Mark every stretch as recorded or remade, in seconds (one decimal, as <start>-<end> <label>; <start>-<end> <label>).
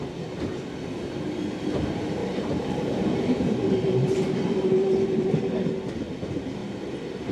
0.0-2.2 recorded; 2.2-5.4 remade; 5.4-7.3 recorded